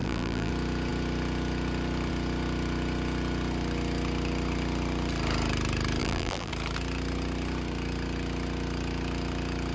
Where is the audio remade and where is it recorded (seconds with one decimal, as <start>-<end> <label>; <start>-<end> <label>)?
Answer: 0.0-0.5 remade; 0.5-6.0 recorded; 6.0-6.5 remade; 6.5-9.7 recorded

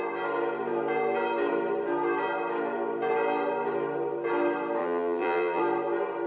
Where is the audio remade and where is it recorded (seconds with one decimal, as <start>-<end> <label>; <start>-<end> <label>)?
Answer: 0.0-4.8 recorded; 4.8-5.6 remade; 5.6-6.3 recorded

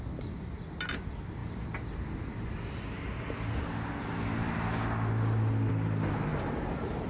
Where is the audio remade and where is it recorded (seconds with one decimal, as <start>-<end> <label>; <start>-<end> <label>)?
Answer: 0.0-6.3 recorded; 6.3-7.1 remade

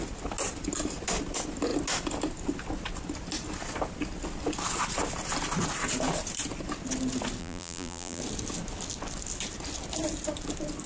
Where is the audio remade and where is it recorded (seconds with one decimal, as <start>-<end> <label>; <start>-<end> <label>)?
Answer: 0.0-7.4 recorded; 7.4-8.2 remade; 8.2-10.9 recorded

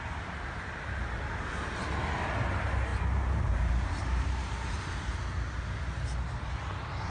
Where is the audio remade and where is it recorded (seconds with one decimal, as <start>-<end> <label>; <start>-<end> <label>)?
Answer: 0.0-2.9 recorded; 2.9-4.8 remade; 4.8-7.1 recorded

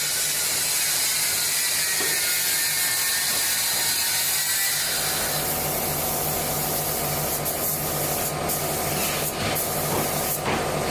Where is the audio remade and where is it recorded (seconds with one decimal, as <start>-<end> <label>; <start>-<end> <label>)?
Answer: 0.0-3.1 recorded; 3.1-4.4 remade; 4.4-10.9 recorded

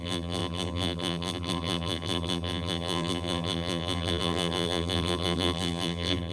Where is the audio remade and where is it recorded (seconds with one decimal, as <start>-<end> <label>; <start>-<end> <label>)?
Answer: 0.0-6.3 remade